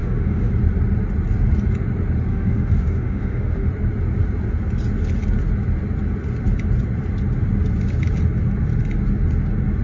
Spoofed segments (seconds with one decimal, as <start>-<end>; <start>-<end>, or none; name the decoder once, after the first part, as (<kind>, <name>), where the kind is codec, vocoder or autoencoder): 0.0-0.5 (autoencoder, DAC-VAE); 2.3-3.7